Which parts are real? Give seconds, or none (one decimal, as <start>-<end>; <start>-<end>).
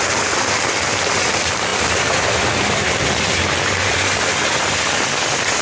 0.0-5.6